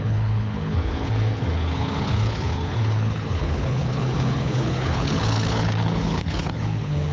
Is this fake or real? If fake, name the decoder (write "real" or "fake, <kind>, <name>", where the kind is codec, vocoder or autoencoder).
fake, codec, HILCodec